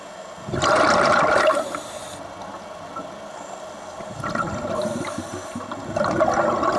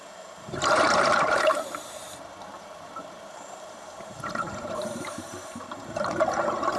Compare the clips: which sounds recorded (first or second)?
first